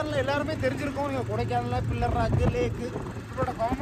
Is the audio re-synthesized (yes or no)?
no